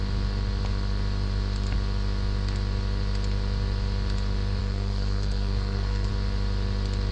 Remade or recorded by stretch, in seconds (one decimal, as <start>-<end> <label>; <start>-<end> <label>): 0.0-4.6 recorded; 4.6-6.1 remade; 6.1-7.1 recorded